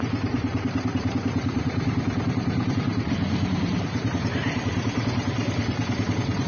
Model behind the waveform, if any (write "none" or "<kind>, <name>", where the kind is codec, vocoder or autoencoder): vocoder, BigVGAN v2